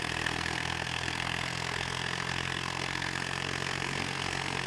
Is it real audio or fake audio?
fake